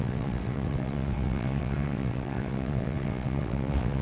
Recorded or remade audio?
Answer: remade